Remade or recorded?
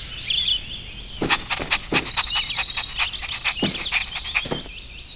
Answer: recorded